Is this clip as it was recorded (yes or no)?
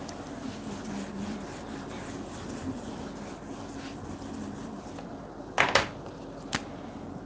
yes